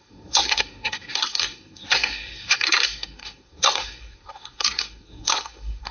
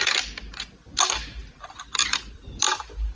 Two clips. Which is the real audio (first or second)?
second